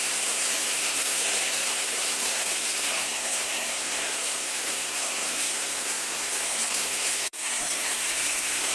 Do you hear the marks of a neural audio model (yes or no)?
yes